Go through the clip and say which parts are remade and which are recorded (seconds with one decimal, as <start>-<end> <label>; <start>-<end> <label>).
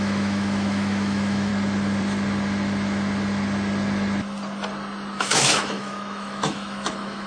0.0-1.5 remade; 1.5-5.2 recorded; 5.2-7.3 remade